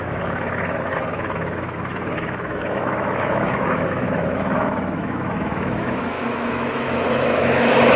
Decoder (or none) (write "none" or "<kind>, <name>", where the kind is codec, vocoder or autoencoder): autoencoder, DAC-VAE